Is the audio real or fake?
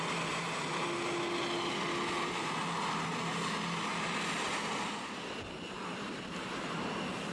real